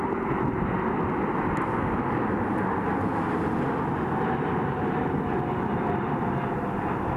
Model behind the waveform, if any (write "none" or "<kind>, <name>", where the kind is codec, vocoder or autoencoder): none